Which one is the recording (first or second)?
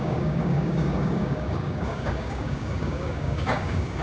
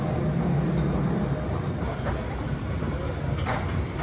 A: second